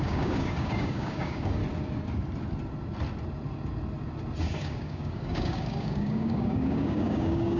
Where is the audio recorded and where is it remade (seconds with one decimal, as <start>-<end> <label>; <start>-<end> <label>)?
0.0-1.6 remade; 1.6-4.4 recorded; 4.4-7.6 remade